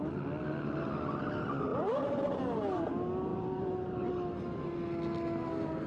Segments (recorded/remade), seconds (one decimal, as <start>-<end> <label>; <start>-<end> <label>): 0.0-1.7 recorded; 1.7-2.2 remade; 2.2-3.3 recorded; 3.3-4.1 remade; 4.1-5.9 recorded